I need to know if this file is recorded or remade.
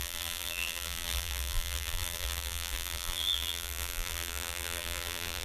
remade